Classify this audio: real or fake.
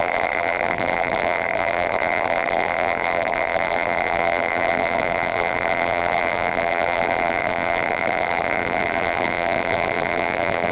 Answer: fake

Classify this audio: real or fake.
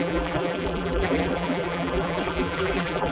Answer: fake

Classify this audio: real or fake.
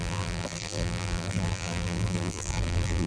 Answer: fake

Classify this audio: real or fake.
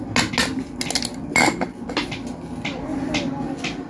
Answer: real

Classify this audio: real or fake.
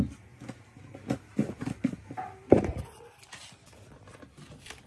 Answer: real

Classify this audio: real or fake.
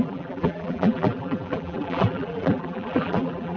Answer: fake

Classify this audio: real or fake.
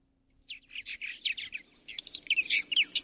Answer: real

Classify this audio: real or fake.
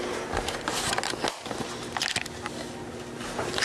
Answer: real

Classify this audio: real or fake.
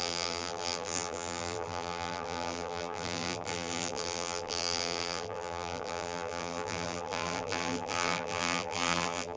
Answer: fake